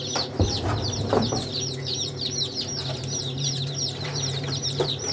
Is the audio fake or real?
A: fake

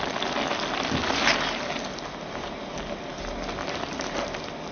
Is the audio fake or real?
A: real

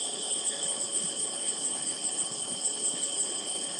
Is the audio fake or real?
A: fake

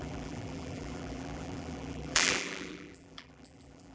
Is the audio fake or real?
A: fake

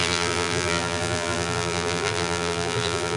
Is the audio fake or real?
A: fake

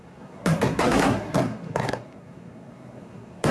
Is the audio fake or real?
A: fake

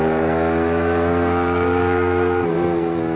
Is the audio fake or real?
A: fake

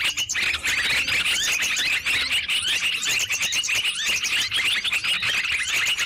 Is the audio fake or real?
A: real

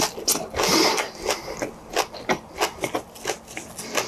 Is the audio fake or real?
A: real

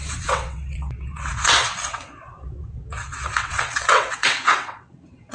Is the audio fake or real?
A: fake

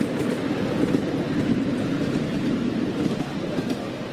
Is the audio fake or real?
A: fake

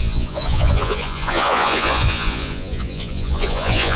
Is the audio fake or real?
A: fake